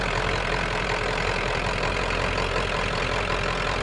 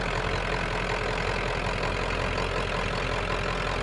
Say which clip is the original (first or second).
second